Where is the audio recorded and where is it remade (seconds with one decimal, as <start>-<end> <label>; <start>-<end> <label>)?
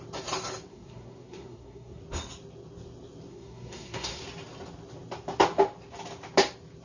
0.0-0.7 recorded; 0.7-2.0 remade; 2.0-3.3 recorded; 3.3-4.2 remade; 4.2-6.8 recorded